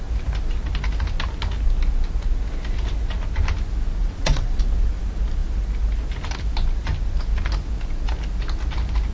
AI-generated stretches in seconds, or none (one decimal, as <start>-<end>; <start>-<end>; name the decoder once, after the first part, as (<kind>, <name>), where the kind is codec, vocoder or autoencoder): 4.0-4.6 (vocoder, WaveNeXt)